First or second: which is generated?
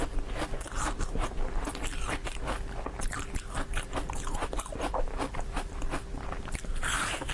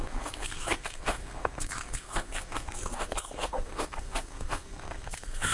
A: second